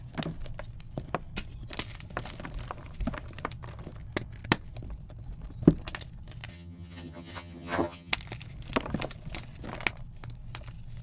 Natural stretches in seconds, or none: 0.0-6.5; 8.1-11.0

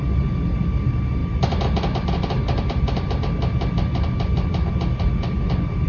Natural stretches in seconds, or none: 0.0-5.9

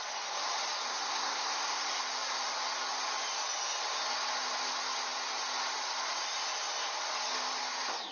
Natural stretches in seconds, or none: 0.0-0.9; 2.0-8.1

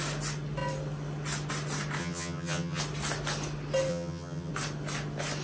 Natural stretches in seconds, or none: 0.0-2.0; 2.8-3.9; 4.5-5.4